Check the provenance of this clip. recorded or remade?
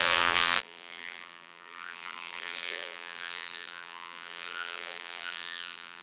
remade